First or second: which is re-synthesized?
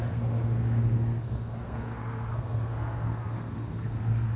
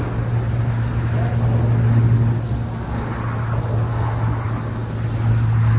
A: first